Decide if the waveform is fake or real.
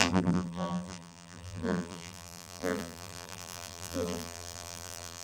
fake